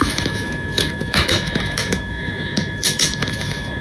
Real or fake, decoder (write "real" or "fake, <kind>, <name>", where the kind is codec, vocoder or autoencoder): fake, autoencoder, DAC-VAE